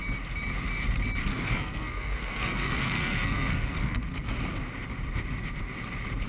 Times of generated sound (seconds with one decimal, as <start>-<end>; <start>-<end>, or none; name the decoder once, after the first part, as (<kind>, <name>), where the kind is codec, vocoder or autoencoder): 1.3-4.3 (codec, SNAC)